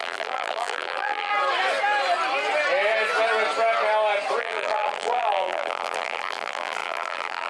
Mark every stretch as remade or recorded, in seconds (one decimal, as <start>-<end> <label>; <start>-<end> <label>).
0.0-1.3 remade; 1.3-4.4 recorded; 4.4-7.5 remade